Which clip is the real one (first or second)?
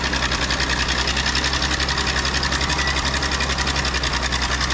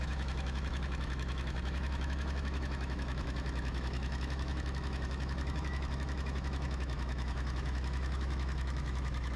first